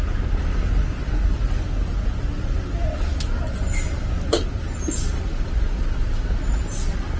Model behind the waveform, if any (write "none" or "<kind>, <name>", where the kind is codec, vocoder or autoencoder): none